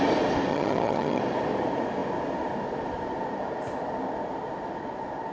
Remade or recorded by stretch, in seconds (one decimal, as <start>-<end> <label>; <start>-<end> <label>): 0.0-0.5 recorded; 0.5-1.2 remade; 1.2-5.3 recorded

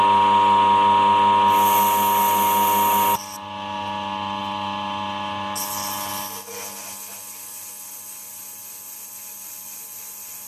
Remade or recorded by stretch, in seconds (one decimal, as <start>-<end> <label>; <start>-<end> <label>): 0.0-10.5 recorded

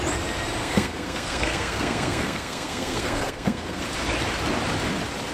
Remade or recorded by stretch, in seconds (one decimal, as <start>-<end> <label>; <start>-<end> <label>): 0.0-0.6 recorded; 0.6-3.8 remade; 3.8-5.3 recorded

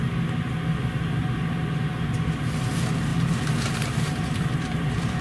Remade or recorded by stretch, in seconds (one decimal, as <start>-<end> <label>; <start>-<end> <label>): 0.0-1.2 recorded; 1.2-2.2 remade; 2.2-3.1 recorded; 3.1-5.2 remade

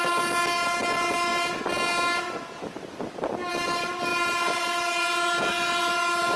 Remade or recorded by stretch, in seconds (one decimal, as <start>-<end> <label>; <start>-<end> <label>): 0.0-6.4 recorded

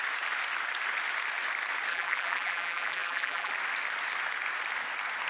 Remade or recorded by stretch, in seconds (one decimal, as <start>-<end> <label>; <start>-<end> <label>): 0.0-1.9 recorded; 1.9-3.5 remade; 3.5-5.3 recorded

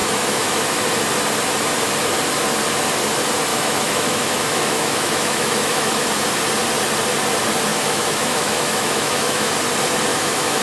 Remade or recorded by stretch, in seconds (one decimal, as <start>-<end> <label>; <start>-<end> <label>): 0.0-0.8 remade; 0.8-3.5 recorded; 3.5-6.1 remade; 6.1-7.7 recorded; 7.7-9.5 remade; 9.5-10.1 recorded; 10.1-10.6 remade

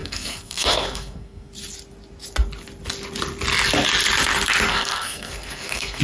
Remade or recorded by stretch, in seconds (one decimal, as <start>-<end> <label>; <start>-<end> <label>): 0.0-1.5 remade; 1.5-4.7 recorded; 4.7-6.0 remade